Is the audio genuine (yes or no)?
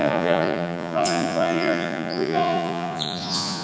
no